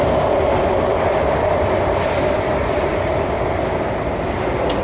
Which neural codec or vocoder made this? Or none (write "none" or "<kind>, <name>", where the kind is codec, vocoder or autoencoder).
none